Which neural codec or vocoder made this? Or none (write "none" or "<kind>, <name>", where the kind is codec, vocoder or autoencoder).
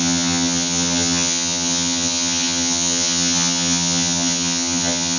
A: vocoder, HiFi-GAN